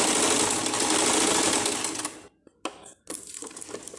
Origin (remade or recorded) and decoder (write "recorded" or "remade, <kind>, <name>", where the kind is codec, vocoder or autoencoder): recorded